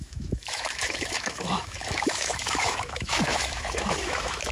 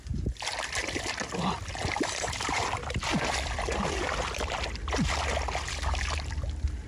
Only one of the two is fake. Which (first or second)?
first